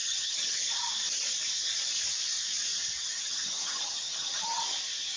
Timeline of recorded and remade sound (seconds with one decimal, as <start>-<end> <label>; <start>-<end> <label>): 0.0-0.6 remade; 0.6-3.0 recorded; 3.0-4.6 remade; 4.6-5.2 recorded